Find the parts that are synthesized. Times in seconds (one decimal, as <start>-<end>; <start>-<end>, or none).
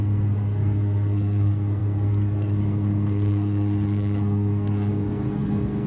0.0-5.9